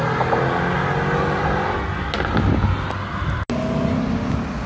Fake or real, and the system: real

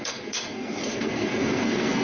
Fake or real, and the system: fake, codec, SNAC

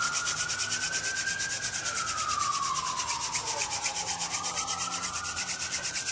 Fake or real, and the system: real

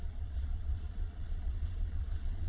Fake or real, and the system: fake, vocoder, Vocos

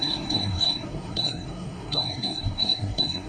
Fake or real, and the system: fake, codec, SNAC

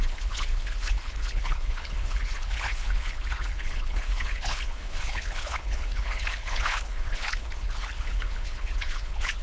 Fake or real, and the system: fake, codec, HILCodec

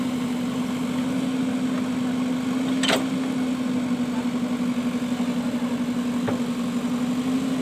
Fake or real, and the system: real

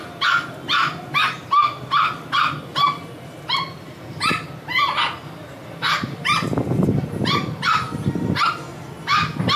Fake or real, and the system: real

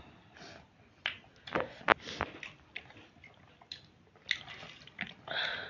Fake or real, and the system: real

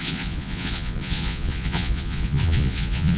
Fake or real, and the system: fake, vocoder, Vocos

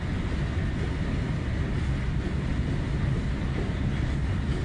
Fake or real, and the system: real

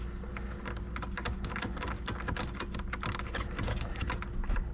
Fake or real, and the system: real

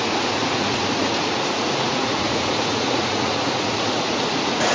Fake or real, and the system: fake, vocoder, Vocos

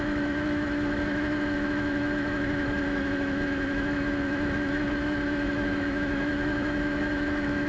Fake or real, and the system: fake, autoencoder, DAC-VAE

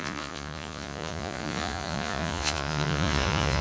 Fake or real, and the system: fake, vocoder, Vocos